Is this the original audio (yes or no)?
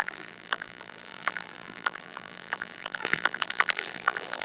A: no